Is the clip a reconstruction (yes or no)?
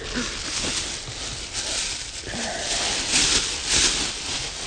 no